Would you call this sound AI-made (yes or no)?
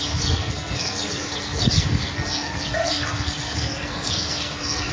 yes